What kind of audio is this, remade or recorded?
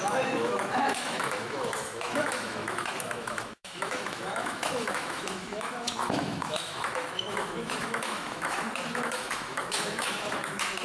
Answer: remade